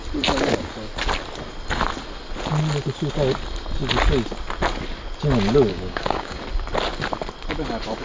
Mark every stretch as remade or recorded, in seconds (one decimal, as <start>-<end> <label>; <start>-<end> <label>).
0.0-5.7 recorded; 5.7-6.4 remade; 6.4-8.0 recorded